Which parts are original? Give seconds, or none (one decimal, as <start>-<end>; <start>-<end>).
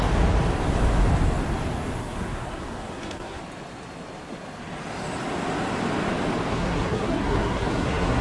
0.0-2.0; 3.4-6.5